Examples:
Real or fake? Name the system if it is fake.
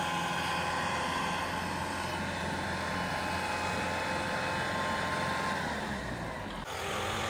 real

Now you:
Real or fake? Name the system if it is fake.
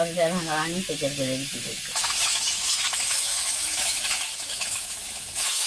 fake, autoencoder, DAC-VAE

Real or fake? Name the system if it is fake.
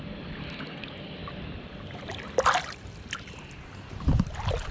real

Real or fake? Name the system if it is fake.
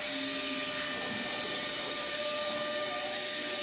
real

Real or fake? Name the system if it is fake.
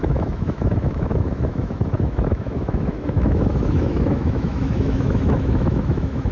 fake, autoencoder, DAC-VAE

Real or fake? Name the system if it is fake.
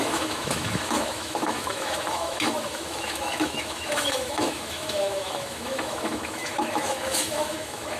fake, autoencoder, DAC-VAE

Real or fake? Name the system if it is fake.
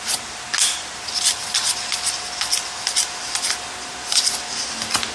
real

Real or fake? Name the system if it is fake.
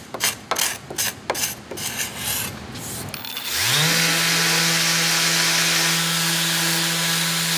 real